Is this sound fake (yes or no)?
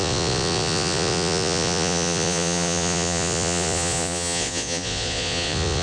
yes